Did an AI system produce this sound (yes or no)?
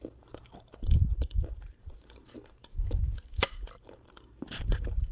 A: yes